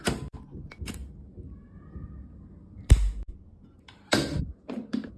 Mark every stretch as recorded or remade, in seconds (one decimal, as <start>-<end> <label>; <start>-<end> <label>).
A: 0.0-1.0 remade; 1.0-4.1 recorded; 4.1-5.2 remade